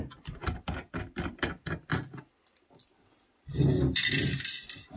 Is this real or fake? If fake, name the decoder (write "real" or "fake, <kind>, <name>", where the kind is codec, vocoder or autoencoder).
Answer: real